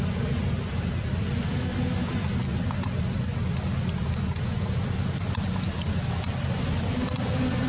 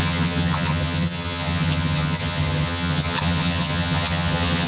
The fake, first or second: second